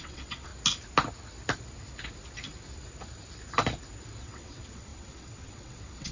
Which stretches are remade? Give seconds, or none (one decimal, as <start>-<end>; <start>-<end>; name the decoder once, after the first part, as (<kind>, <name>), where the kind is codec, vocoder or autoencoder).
0.0-0.5 (vocoder, WaveNeXt); 4.2-6.1